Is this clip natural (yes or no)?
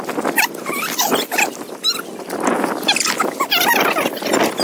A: yes